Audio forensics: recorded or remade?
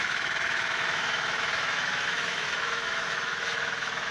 remade